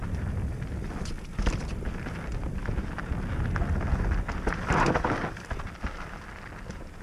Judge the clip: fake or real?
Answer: real